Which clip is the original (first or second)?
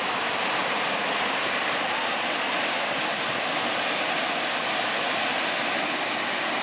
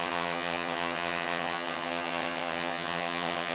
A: first